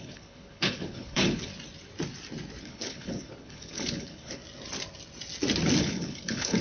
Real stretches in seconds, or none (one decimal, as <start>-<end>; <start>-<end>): 1.5-2.6; 4.4-5.8